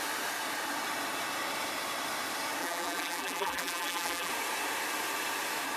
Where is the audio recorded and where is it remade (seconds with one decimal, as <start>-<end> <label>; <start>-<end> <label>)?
0.0-2.6 recorded; 2.6-4.3 remade; 4.3-5.8 recorded